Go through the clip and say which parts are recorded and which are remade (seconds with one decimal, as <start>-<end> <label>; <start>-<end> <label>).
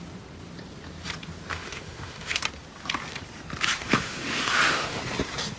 0.0-1.5 recorded; 1.5-2.4 remade; 2.4-3.8 recorded; 3.8-5.0 remade; 5.0-5.6 recorded